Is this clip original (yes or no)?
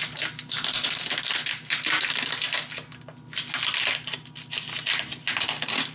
yes